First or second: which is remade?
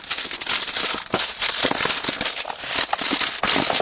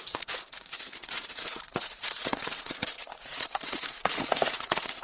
second